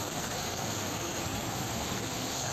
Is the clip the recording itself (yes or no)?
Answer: no